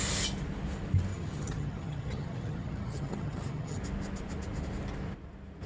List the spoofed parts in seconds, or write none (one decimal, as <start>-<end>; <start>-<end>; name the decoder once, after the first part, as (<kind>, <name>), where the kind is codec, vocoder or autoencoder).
1.1-3.8 (vocoder, HiFi-GAN)